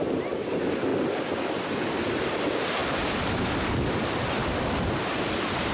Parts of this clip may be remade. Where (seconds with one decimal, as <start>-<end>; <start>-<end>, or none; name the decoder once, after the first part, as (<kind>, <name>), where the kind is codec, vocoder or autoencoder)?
0.0-0.9 (vocoder, BigVGAN v2); 2.4-4.4; 4.9-5.7